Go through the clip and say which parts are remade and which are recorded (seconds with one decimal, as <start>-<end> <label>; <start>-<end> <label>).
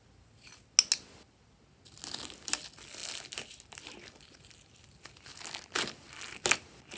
0.0-7.0 recorded